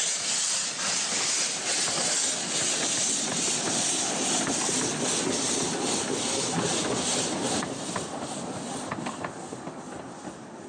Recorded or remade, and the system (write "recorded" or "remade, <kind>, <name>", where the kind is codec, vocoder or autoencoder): recorded